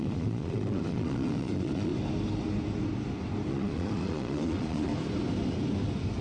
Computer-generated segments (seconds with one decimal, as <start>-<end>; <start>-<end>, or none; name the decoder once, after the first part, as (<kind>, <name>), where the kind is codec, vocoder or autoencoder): 0.0-1.9 (vocoder, Vocos); 3.5-4.9